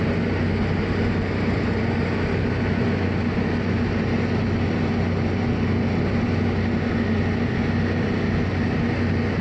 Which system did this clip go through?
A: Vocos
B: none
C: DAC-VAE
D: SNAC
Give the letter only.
B